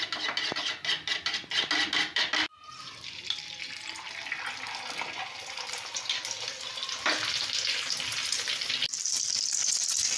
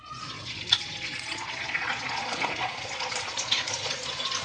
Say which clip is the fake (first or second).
second